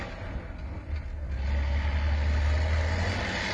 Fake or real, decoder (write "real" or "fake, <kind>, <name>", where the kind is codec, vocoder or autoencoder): real